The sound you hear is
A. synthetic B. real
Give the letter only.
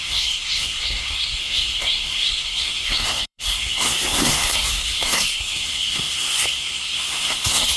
A